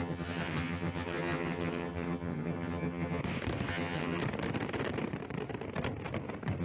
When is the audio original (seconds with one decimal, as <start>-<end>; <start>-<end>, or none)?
3.2-3.7; 4.2-6.6